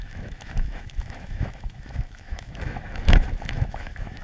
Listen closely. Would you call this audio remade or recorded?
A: remade